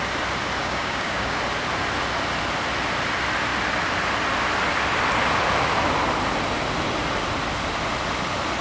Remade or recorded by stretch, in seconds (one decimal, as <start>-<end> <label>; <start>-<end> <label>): 0.0-0.6 recorded; 0.6-1.4 remade; 1.4-8.6 recorded